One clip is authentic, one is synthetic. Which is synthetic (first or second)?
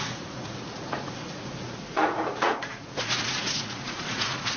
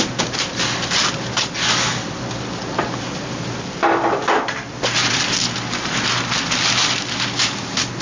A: first